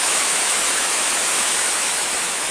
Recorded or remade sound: remade